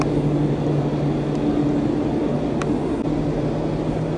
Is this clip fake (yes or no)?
no